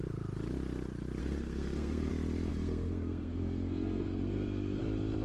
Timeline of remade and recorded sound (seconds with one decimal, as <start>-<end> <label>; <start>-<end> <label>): 0.0-1.2 recorded; 1.2-2.1 remade; 2.1-2.5 recorded; 2.5-4.8 remade; 4.8-5.2 recorded

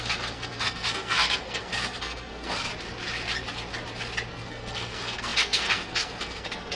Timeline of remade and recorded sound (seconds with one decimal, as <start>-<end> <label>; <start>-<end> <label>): 0.0-2.7 remade; 2.7-4.3 recorded; 4.3-6.8 remade

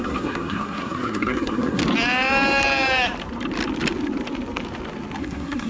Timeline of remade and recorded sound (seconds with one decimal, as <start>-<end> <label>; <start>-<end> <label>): 0.0-1.8 remade; 1.8-5.2 recorded; 5.2-5.7 remade

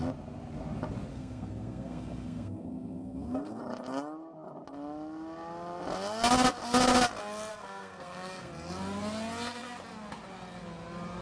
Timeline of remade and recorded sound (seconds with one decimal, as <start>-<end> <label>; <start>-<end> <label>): 0.0-1.1 recorded; 1.1-3.6 remade; 3.6-7.5 recorded; 7.5-8.5 remade; 8.5-11.2 recorded

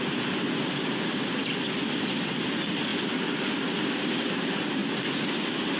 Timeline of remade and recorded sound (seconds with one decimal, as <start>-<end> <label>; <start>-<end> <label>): 0.0-5.8 recorded

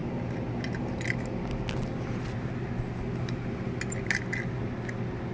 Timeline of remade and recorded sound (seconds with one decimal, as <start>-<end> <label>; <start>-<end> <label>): 0.0-5.3 recorded

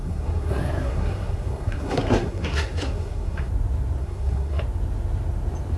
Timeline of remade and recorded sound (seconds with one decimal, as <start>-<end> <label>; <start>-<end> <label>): 0.0-3.5 remade; 3.5-4.0 recorded; 4.0-4.6 remade; 4.6-5.8 recorded

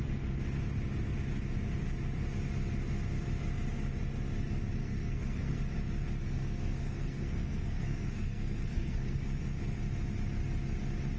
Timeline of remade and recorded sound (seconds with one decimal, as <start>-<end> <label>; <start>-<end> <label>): 0.0-4.8 recorded; 4.8-5.6 remade; 5.6-6.2 recorded; 6.2-9.8 remade; 9.8-11.2 recorded